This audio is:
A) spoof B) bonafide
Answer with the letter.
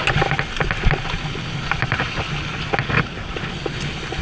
B